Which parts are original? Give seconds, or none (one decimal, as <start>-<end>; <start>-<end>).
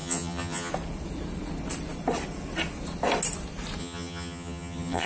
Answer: 0.7-3.8